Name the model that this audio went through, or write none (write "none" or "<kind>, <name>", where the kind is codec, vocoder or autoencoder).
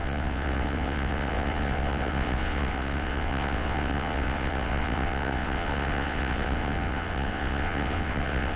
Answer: vocoder, WaveNeXt